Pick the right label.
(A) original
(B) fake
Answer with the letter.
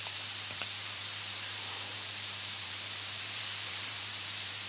B